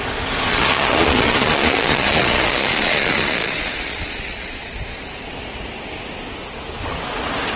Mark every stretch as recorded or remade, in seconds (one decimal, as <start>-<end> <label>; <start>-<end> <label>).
0.0-0.5 recorded; 0.5-4.8 remade; 4.8-7.6 recorded